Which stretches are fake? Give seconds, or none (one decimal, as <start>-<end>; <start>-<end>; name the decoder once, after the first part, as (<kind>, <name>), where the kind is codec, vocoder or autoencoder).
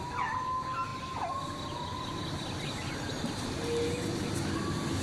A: none